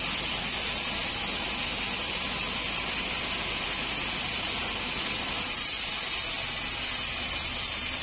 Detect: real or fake real